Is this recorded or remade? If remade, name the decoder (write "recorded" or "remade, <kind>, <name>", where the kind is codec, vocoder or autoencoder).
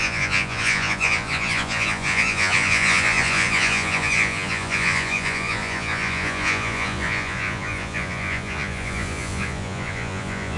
remade, vocoder, Vocos